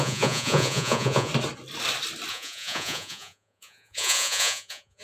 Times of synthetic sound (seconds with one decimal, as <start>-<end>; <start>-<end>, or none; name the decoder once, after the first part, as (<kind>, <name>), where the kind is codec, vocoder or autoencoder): 0.0-1.3 (vocoder, Vocos); 2.3-5.0